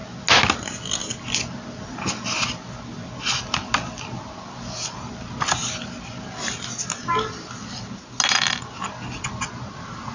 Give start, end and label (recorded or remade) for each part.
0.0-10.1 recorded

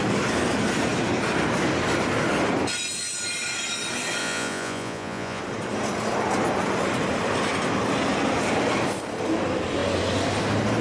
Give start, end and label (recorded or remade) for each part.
0.0-4.2 recorded; 4.2-5.4 remade; 5.4-10.8 recorded

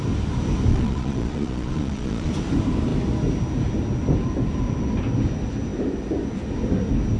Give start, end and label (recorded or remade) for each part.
0.0-0.7 recorded; 0.7-2.3 remade; 2.3-7.2 recorded

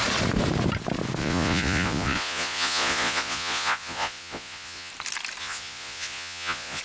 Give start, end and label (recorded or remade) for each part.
0.0-1.2 recorded; 1.2-4.9 remade; 4.9-5.4 recorded; 5.4-6.8 remade

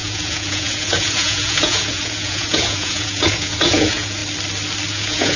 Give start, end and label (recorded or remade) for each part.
0.0-4.2 remade; 4.2-4.9 recorded; 4.9-5.4 remade

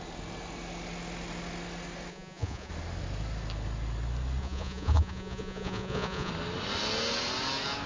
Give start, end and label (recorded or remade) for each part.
0.0-2.1 recorded; 2.1-2.7 remade; 2.7-4.4 recorded; 4.4-6.3 remade; 6.3-7.9 recorded

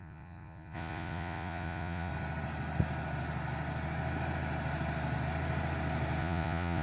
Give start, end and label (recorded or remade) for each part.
0.0-2.1 remade; 2.1-6.2 recorded; 6.2-6.8 remade

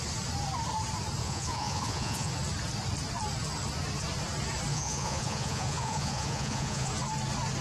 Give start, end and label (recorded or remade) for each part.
0.0-1.2 recorded; 1.2-2.3 remade; 2.3-4.7 recorded; 4.7-6.9 remade; 6.9-7.6 recorded